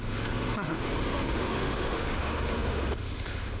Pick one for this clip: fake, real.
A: fake